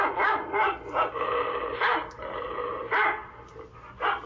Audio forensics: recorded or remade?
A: recorded